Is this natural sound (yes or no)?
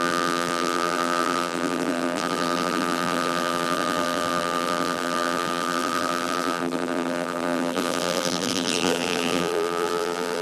no